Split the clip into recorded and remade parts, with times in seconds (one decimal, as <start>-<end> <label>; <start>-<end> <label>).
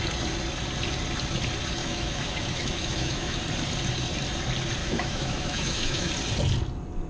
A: 0.0-1.8 recorded; 1.8-3.4 remade; 3.4-4.8 recorded; 4.8-6.1 remade; 6.1-7.1 recorded